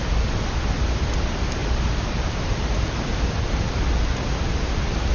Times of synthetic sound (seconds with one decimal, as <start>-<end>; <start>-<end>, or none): 1.6-5.1